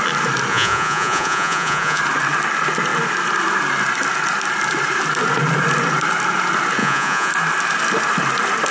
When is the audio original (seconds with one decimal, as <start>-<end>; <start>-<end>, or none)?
0.0-0.5; 2.0-6.8; 7.3-8.7